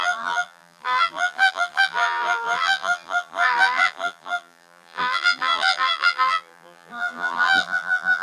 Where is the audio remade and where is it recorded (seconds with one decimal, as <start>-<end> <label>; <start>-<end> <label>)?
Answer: 0.0-8.2 remade